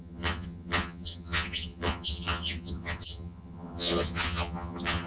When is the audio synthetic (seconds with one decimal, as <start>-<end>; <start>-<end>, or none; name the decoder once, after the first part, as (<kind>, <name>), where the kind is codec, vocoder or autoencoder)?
0.0-5.1 (vocoder, HiFi-GAN)